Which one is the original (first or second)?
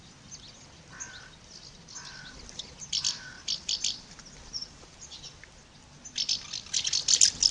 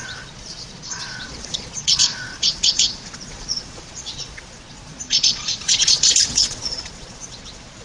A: first